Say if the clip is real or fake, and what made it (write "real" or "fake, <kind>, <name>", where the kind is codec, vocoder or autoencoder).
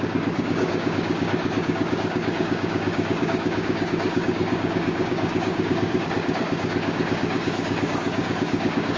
fake, codec, DAC